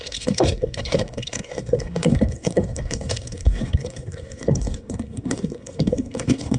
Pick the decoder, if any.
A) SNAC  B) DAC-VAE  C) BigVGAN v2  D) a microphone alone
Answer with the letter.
A